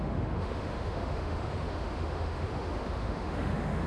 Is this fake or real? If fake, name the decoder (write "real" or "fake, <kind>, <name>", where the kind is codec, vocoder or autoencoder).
fake, autoencoder, DAC-VAE